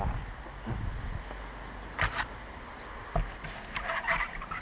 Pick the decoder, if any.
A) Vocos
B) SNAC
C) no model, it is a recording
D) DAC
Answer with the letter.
C